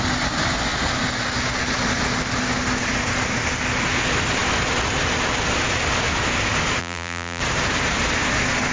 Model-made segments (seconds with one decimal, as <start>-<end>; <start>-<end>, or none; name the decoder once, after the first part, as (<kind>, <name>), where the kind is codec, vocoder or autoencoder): 6.8-7.4 (vocoder, BigVGAN v2)